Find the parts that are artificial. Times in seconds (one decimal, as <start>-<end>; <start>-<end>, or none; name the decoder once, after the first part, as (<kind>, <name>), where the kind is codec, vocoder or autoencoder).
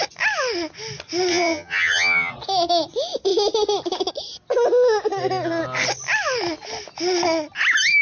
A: 1.3-2.3 (vocoder, HiFi-GAN)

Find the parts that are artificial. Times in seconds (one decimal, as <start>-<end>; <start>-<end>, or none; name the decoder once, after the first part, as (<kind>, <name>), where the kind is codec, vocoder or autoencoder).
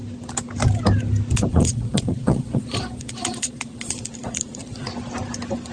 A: 1.5-4.9 (vocoder, Vocos)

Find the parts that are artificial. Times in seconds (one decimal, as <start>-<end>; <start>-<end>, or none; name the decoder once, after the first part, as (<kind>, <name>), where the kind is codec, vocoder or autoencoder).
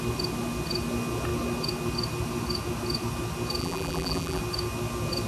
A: 3.6-4.4 (vocoder, BigVGAN v2)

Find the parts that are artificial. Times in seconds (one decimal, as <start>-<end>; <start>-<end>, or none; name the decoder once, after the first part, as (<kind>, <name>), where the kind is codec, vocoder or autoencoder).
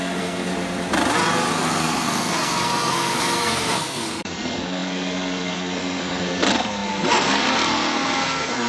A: 0.0-0.5 (codec, SNAC); 1.5-8.7